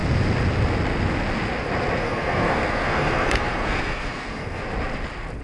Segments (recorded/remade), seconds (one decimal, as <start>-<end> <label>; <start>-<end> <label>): 0.0-2.0 recorded; 2.0-4.6 remade; 4.6-5.4 recorded